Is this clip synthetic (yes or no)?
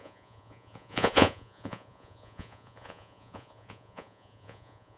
yes